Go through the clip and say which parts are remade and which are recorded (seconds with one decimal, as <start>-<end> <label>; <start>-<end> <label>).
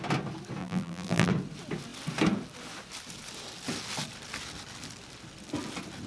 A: 0.0-0.6 recorded; 0.6-1.3 remade; 1.3-6.1 recorded